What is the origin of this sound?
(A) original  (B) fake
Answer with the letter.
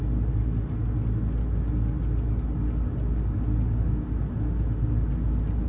A